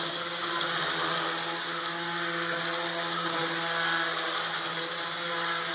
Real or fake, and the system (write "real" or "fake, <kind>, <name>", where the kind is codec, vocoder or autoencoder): real